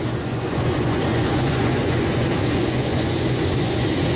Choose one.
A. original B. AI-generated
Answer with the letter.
B